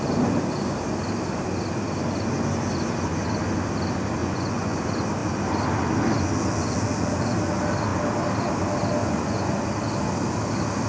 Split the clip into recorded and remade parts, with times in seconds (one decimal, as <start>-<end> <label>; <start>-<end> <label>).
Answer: 0.0-4.2 recorded; 4.2-4.8 remade; 4.8-9.0 recorded; 9.0-9.6 remade; 9.6-10.9 recorded